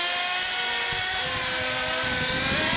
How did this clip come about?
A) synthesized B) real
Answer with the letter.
B